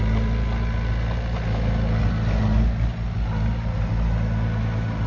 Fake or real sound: real